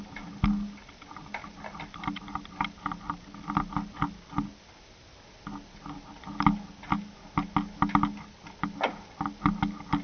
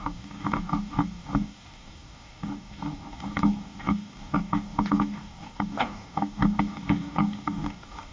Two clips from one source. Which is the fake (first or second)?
second